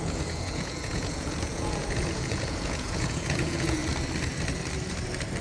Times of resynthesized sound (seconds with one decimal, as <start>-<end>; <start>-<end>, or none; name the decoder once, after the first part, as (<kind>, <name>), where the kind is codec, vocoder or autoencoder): 0.0-3.8 (vocoder, Vocos)